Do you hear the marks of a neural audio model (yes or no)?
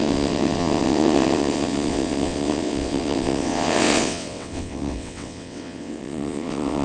yes